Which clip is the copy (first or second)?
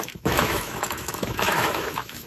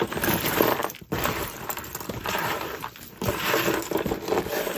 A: first